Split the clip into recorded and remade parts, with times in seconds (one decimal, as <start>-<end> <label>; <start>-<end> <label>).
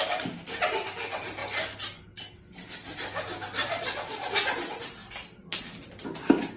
0.0-3.6 recorded; 3.6-4.3 remade; 4.3-6.6 recorded